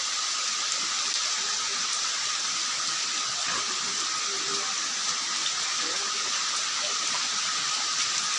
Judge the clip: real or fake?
real